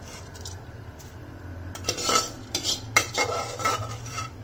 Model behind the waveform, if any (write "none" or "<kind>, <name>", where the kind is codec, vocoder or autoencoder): vocoder, BigVGAN v2